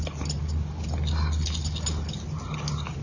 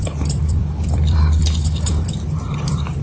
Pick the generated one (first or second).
second